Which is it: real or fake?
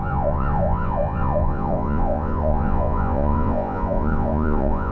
fake